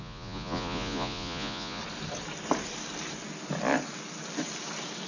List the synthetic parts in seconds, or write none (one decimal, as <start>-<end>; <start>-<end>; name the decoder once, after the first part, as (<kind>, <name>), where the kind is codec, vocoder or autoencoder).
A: 0.0-1.8 (vocoder, Vocos)